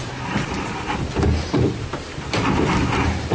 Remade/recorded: remade